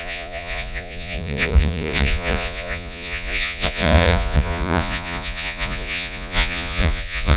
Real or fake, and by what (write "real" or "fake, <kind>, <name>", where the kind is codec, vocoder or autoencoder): fake, vocoder, Vocos